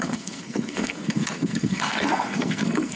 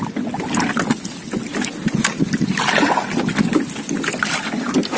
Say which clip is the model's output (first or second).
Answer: first